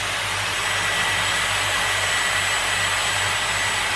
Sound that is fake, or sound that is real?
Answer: real